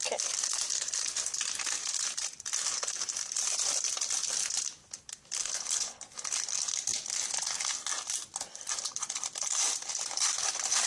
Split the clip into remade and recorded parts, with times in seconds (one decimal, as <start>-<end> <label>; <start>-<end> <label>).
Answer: 0.0-5.4 recorded; 5.4-6.0 remade; 6.0-10.9 recorded